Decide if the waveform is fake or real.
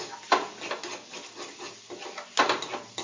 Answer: real